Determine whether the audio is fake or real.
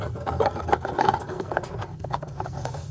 fake